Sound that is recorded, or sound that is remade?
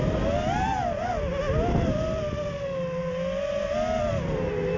recorded